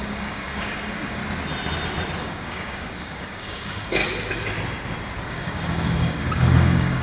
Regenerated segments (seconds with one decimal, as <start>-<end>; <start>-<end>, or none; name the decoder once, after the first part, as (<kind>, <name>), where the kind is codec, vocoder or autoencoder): 0.0-1.2 (codec, DAC); 2.2-4.0; 5.2-7.0